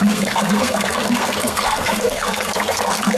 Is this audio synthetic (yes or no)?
yes